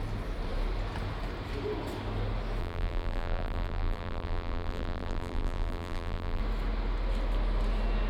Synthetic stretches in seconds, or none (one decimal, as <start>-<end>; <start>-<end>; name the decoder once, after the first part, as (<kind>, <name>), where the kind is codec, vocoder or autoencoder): 2.6-6.4 (vocoder, BigVGAN v2)